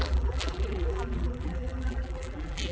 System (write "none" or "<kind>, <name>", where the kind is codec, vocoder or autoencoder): vocoder, BigVGAN v2